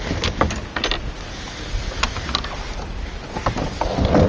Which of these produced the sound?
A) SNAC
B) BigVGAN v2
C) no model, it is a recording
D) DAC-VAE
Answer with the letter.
C